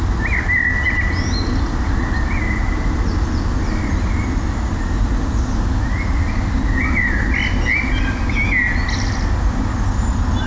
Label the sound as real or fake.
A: real